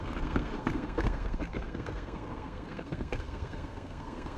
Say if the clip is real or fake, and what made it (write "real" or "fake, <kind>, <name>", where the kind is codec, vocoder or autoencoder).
fake, codec, SNAC